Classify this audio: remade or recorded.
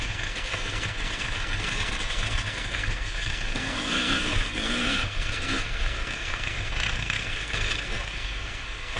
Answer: remade